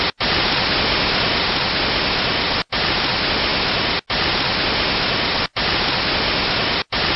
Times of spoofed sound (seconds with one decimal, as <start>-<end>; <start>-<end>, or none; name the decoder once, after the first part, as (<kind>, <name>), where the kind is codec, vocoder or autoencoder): none